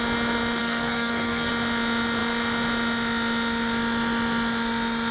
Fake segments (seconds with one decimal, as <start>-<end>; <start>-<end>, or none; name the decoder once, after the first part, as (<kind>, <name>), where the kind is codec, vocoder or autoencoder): 0.6-1.5 (codec, SNAC)